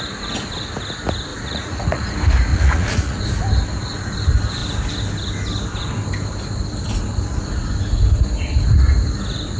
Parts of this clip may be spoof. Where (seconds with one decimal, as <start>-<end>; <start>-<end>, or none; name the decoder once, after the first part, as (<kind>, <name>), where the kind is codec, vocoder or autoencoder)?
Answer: 1.3-2.0 (vocoder, Vocos); 2.5-3.2